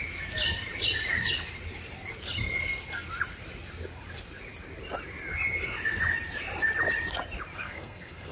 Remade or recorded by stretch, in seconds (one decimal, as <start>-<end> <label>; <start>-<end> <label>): 0.0-7.6 recorded; 7.6-8.3 remade